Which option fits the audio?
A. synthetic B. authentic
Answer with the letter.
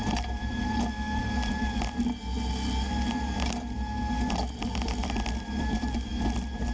B